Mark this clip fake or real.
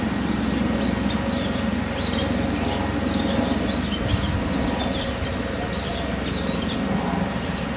real